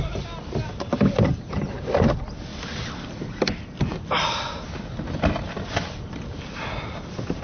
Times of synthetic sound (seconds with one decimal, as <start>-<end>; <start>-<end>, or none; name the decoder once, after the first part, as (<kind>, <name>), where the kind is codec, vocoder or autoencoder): none